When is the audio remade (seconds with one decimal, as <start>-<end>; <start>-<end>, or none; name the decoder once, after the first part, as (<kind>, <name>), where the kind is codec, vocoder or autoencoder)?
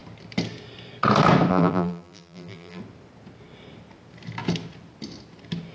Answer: 1.5-2.8 (vocoder, BigVGAN v2)